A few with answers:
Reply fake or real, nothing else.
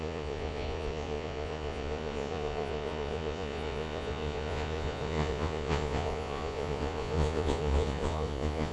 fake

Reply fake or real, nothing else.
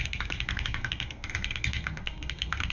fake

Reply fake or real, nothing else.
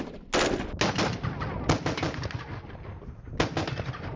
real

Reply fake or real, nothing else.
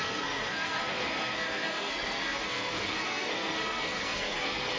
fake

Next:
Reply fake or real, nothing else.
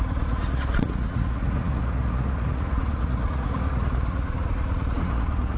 fake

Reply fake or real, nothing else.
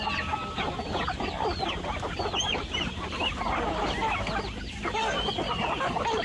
real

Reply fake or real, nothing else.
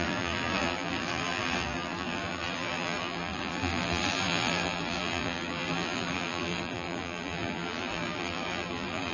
fake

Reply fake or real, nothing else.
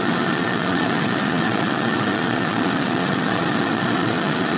fake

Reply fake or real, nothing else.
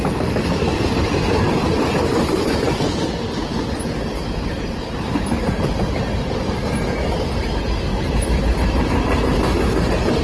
real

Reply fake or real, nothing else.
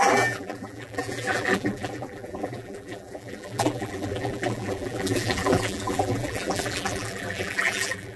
fake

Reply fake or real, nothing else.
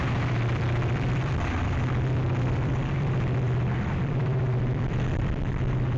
fake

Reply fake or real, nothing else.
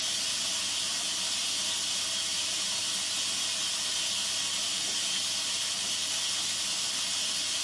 real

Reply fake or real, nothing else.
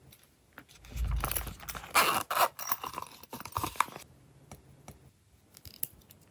real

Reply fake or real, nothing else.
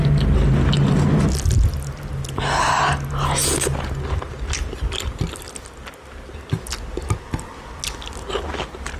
real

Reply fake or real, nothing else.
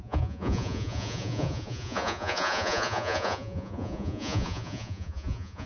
fake